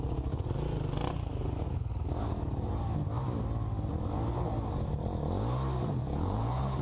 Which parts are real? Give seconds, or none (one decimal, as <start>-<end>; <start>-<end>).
0.0-6.1